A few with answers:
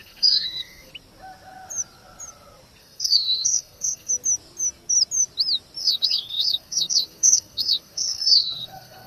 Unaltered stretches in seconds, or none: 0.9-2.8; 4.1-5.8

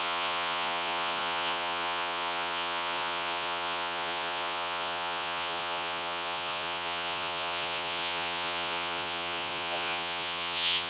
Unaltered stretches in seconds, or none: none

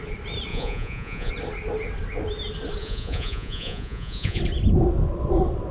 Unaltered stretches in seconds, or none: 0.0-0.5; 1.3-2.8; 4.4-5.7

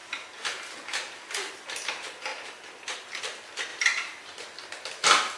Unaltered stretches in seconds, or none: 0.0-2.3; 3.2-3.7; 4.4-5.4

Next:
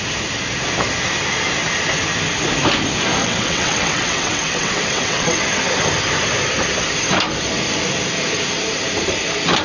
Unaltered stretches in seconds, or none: 0.0-3.2; 5.4-9.6

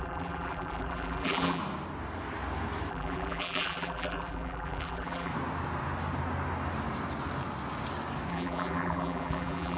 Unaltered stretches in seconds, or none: 1.6-2.9; 5.3-8.3

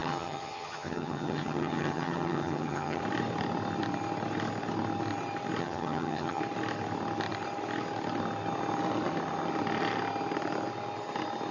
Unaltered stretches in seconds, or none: 3.0-5.6; 6.4-11.5

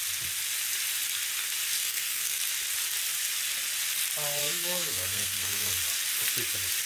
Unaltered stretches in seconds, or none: 0.0-1.8; 2.4-4.4; 5.7-6.9